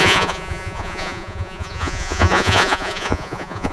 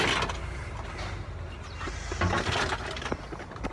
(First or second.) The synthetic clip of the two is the first